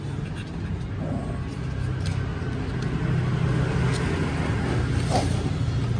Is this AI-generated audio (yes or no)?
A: no